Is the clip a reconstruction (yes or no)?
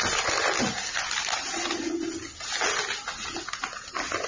no